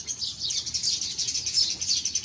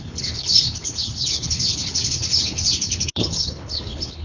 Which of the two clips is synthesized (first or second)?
second